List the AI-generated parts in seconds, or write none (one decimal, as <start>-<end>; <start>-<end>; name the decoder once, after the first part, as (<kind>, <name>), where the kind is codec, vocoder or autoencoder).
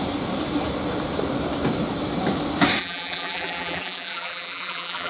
2.8-5.1 (vocoder, BigVGAN v2)